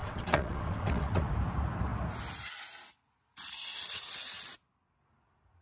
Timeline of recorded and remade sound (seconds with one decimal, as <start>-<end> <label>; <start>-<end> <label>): 0.0-1.3 remade; 1.3-5.6 recorded